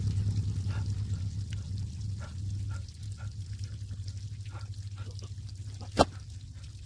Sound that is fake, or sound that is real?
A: real